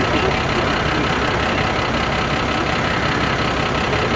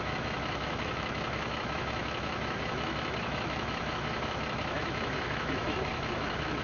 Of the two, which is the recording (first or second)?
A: first